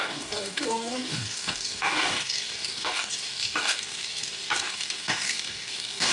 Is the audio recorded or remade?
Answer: remade